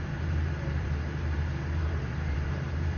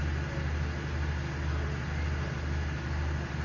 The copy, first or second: first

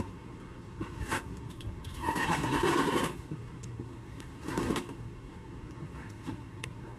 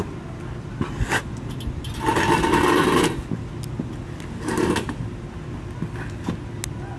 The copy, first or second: first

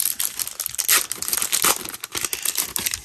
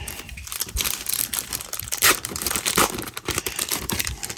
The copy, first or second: second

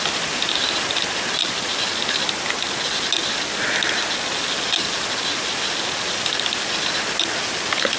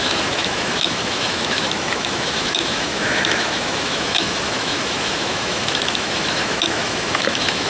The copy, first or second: second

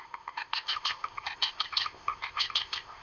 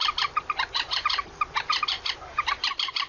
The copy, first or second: first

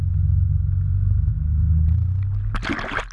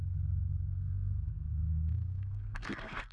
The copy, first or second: second